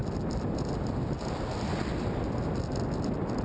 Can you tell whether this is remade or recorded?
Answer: recorded